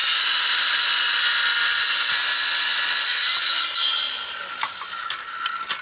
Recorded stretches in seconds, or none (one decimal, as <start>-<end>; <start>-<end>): 0.0-0.7; 2.2-5.8

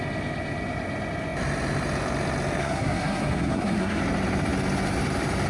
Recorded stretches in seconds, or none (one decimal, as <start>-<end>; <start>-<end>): 0.0-2.6; 4.0-5.5

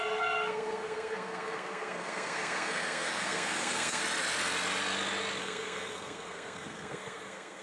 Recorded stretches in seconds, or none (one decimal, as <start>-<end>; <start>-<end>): 4.0-5.4